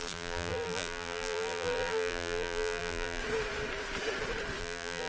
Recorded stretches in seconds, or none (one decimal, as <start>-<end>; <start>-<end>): 3.2-4.6